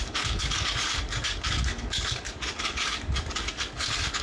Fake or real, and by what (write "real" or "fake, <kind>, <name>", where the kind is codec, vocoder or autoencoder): fake, codec, DAC